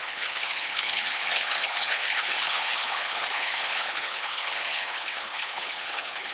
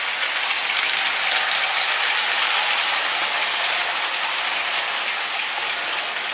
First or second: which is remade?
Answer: first